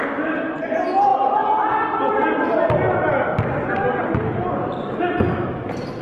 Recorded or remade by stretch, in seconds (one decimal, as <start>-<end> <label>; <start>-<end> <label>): 0.0-6.0 recorded